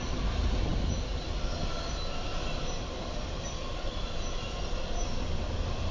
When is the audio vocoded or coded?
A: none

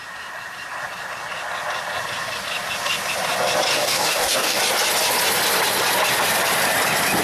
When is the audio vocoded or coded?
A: 3.7-4.6 (codec, DAC)